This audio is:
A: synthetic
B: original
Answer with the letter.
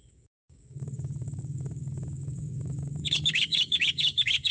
A